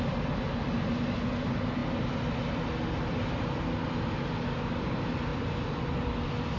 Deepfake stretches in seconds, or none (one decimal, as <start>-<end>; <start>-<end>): 5.3-6.1